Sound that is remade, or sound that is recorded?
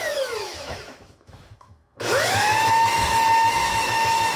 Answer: remade